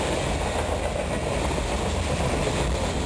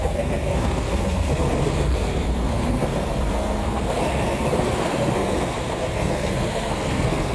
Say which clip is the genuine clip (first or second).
first